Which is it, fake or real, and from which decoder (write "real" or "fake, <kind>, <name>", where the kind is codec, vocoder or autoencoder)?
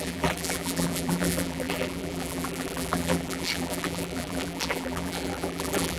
fake, vocoder, BigVGAN v2